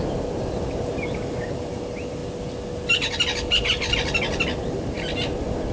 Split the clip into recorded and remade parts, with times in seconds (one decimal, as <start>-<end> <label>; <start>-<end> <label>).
0.0-5.7 recorded